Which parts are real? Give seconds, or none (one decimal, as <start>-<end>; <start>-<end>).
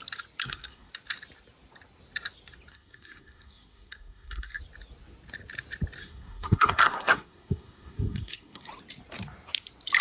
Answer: 0.0-0.4; 0.9-2.7; 4.6-6.0; 8.7-10.0